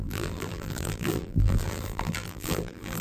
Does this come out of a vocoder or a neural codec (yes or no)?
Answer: yes